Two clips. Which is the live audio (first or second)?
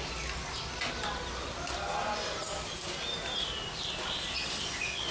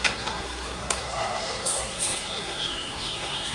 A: first